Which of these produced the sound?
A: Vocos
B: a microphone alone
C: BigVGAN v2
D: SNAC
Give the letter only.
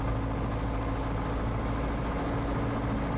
B